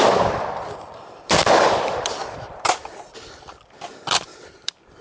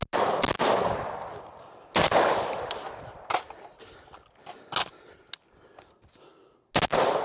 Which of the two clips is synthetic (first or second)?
first